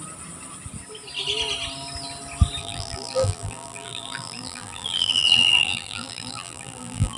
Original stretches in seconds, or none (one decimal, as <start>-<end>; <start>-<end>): 0.0-2.6